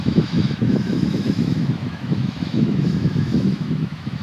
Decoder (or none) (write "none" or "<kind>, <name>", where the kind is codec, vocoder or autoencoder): autoencoder, DAC-VAE